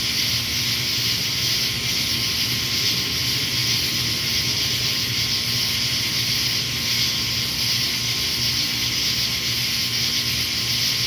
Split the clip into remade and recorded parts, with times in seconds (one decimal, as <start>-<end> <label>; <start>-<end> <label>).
0.0-11.1 recorded